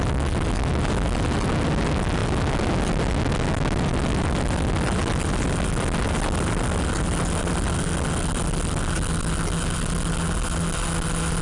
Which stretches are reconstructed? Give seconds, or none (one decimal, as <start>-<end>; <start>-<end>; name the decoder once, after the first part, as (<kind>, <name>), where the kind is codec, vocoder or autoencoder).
none